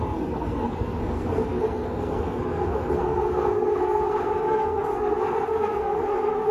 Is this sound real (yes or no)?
no